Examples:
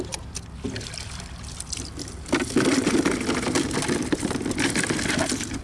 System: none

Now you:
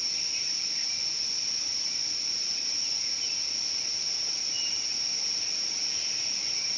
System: vocoder, BigVGAN v2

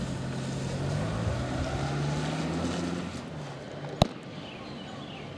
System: none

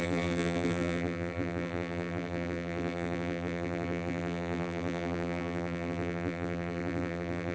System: vocoder, BigVGAN v2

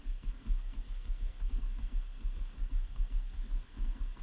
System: codec, SNAC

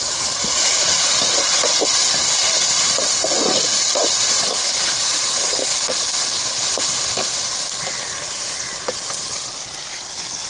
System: none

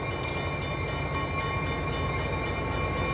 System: none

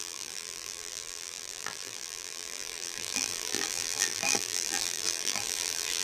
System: vocoder, BigVGAN v2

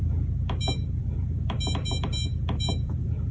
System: vocoder, BigVGAN v2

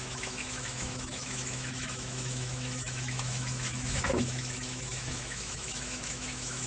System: autoencoder, DAC-VAE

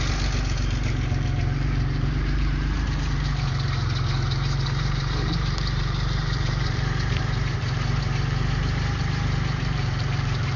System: vocoder, BigVGAN v2